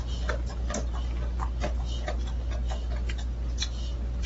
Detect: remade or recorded recorded